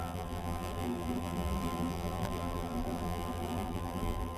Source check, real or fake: fake